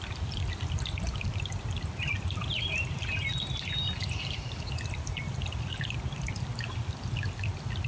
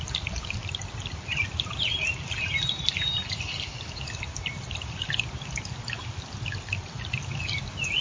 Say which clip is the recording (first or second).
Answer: first